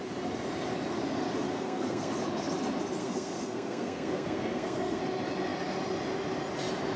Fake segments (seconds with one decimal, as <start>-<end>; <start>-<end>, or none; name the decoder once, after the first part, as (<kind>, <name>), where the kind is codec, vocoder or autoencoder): 1.5-2.1 (codec, SNAC); 3.0-5.0